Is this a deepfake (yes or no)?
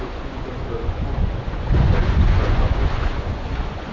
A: yes